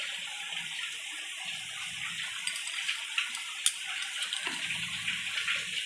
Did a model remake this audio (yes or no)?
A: no